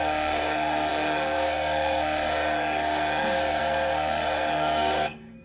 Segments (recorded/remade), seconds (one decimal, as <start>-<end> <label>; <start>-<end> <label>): 0.0-5.4 remade